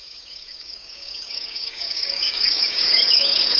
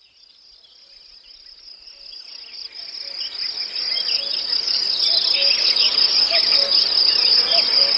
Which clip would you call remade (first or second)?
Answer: first